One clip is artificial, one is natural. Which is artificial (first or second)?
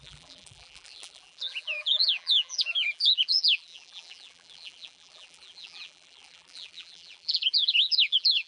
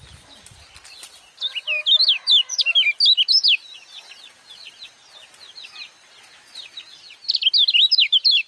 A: first